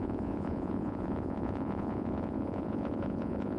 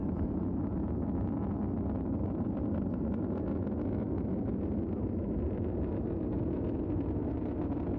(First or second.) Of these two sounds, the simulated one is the first